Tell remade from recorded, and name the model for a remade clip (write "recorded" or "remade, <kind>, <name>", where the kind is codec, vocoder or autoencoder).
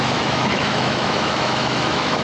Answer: remade, autoencoder, DAC-VAE